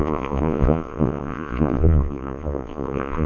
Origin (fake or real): fake